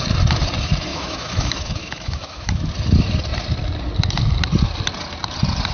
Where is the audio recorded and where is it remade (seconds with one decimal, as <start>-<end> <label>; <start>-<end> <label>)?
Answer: 0.0-0.9 recorded; 0.9-2.7 remade; 2.7-5.7 recorded